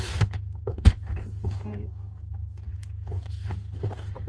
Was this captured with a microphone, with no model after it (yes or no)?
no